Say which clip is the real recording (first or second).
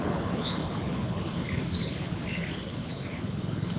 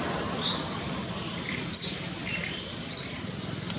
second